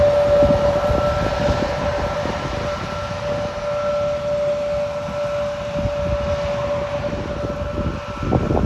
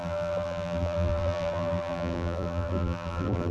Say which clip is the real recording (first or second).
first